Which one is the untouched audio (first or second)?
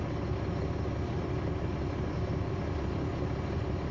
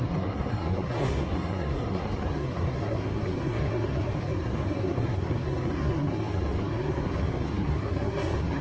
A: first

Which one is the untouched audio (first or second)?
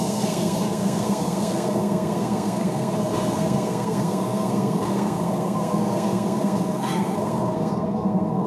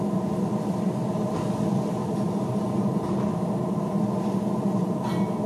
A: second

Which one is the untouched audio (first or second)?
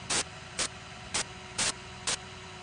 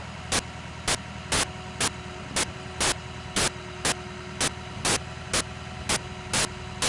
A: second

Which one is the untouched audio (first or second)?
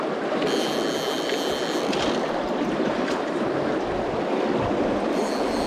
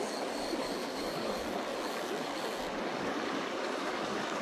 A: first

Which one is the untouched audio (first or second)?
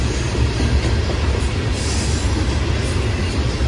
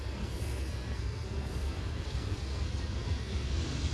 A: first